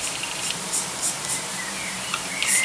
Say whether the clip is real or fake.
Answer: fake